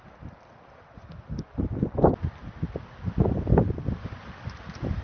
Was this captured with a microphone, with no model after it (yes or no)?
yes